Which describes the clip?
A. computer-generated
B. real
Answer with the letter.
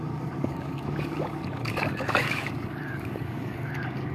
A